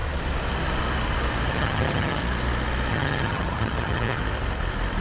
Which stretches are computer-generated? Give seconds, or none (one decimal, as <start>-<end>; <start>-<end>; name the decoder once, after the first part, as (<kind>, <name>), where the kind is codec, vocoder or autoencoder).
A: 1.5-2.2 (vocoder, HiFi-GAN); 2.9-4.2